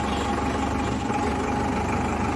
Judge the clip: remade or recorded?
recorded